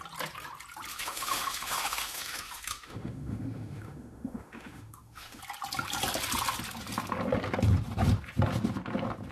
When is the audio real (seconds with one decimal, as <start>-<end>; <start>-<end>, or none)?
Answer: 0.0-0.9; 5.4-9.3

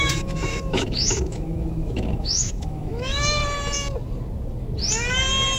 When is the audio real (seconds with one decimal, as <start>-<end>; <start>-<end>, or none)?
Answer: 3.4-5.6

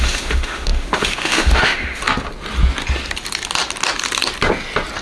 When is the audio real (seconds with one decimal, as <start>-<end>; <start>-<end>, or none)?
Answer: 2.0-5.0

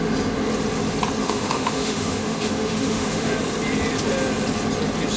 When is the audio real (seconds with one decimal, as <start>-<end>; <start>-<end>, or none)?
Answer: 0.0-1.2; 3.3-5.2